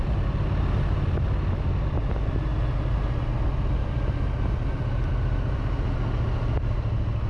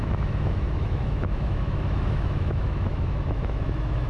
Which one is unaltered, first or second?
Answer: first